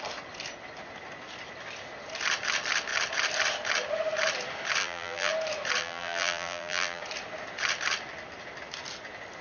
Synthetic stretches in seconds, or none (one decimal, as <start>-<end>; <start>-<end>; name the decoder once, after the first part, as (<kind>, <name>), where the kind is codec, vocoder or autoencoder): 4.8-5.3 (vocoder, BigVGAN v2); 5.8-7.0